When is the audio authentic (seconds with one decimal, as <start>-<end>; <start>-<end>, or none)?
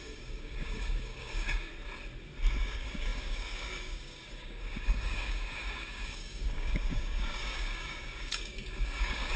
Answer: 1.7-2.6